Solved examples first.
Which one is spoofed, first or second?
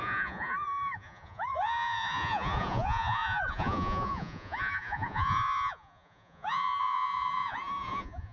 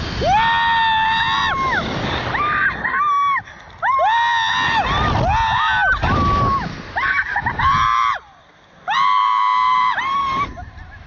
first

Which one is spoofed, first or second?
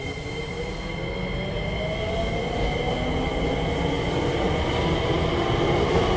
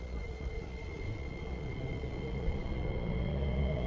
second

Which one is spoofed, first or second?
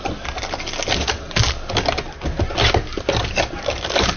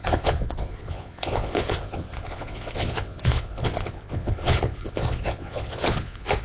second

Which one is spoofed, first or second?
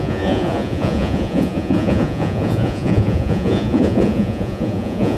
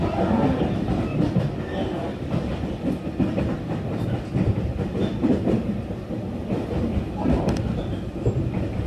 first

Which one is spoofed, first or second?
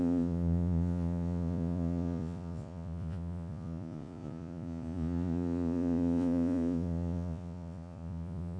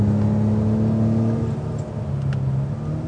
first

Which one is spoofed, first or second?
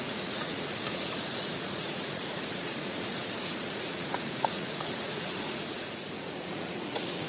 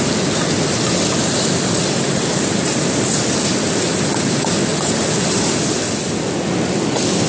first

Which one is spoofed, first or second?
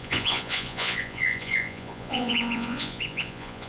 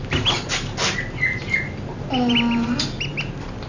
first